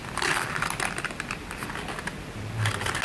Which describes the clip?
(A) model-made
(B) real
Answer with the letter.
B